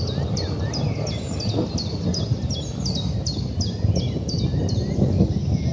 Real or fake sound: real